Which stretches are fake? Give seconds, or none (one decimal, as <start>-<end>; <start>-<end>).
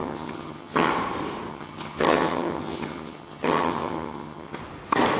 0.0-0.9; 1.5-4.6